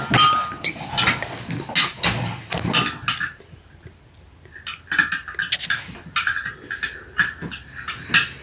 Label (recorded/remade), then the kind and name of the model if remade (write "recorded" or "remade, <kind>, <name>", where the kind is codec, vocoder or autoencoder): recorded